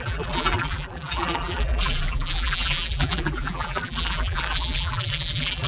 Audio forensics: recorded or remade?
remade